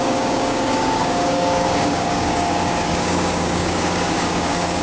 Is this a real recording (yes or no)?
no